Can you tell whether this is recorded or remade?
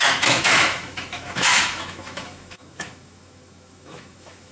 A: remade